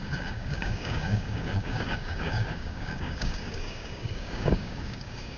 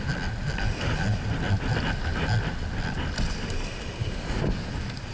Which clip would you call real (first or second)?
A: second